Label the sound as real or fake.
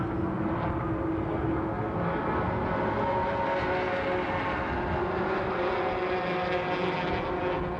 real